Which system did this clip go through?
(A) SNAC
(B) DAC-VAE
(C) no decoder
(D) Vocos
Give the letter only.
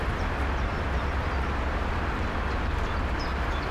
C